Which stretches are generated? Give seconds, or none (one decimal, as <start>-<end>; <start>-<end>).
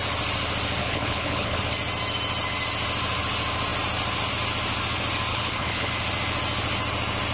0.8-1.6; 5.3-5.9